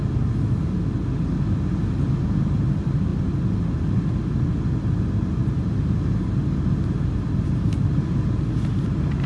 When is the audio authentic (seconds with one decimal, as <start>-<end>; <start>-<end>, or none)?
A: 0.0-9.3